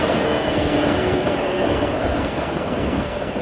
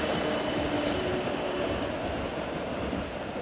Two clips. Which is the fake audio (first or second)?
first